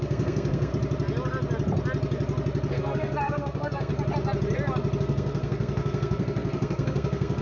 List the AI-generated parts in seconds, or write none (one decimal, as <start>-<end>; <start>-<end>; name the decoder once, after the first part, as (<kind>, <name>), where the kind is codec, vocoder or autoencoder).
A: 0.0-0.7 (codec, SNAC); 2.7-3.9; 5.0-7.4